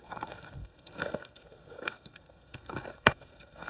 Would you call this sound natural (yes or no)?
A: no